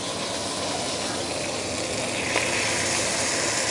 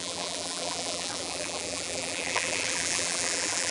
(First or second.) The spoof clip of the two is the second